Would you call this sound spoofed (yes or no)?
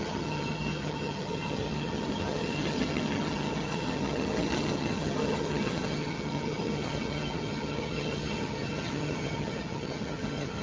yes